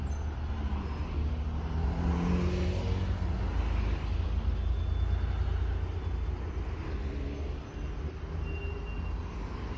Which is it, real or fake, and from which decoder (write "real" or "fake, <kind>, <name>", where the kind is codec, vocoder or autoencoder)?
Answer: real